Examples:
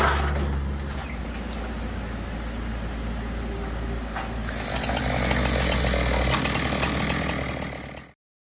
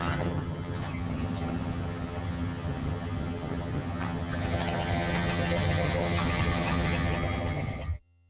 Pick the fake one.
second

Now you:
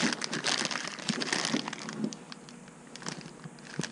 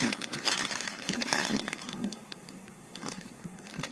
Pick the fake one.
second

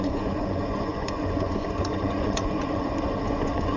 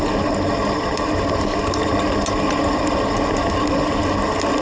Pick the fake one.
first